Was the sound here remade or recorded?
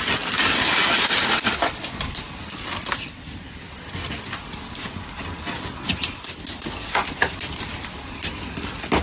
recorded